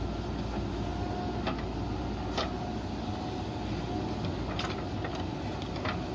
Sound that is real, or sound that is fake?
real